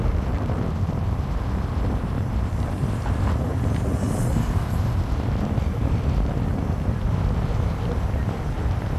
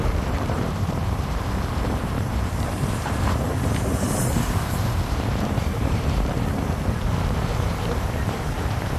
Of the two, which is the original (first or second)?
first